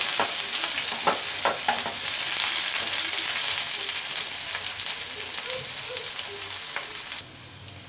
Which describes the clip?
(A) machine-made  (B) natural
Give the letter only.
B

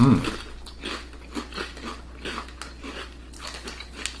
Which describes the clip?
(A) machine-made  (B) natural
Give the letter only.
B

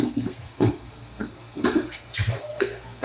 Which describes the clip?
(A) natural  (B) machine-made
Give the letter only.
B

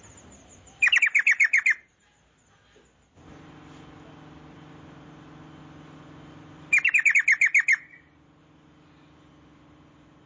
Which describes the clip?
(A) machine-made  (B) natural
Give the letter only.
B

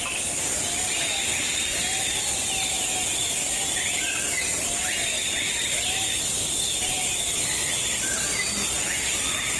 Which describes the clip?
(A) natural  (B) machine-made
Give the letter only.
A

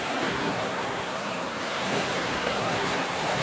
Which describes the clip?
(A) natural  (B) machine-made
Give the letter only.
B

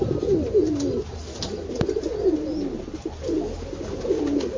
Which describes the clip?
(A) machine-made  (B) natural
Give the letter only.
B